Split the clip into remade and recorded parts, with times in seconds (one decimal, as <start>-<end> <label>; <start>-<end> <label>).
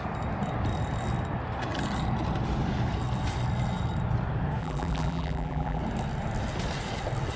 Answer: 0.0-4.6 recorded; 4.6-5.8 remade; 5.8-7.4 recorded